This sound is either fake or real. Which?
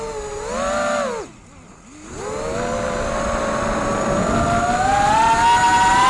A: real